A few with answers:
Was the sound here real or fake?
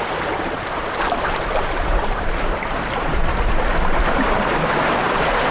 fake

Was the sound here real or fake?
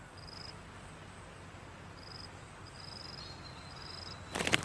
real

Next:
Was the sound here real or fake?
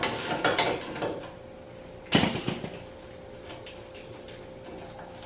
real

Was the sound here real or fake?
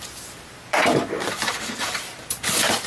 fake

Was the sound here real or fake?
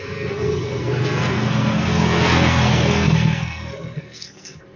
fake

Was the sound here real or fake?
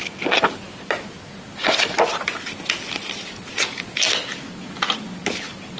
real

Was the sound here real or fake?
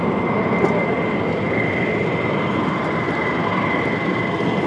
real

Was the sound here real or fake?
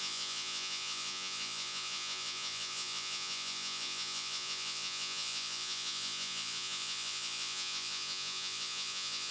fake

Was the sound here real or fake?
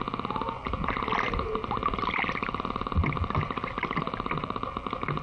real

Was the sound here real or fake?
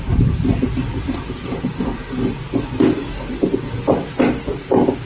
real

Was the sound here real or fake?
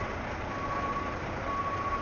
real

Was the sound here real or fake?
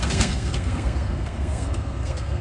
fake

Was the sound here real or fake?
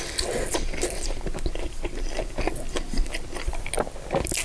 real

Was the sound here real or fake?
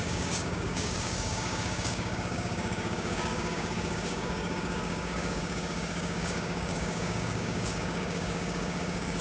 fake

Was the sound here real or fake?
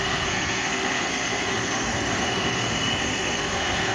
fake